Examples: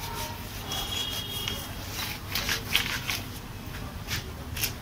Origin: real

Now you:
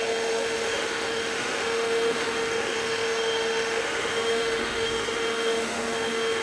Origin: fake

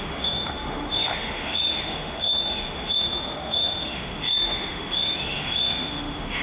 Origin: fake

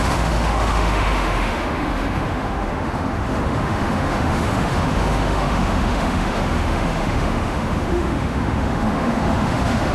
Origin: fake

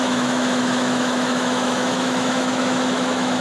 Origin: fake